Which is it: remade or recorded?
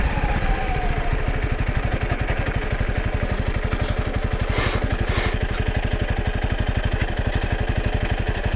recorded